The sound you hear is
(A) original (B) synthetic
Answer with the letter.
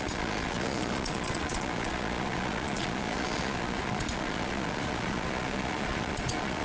B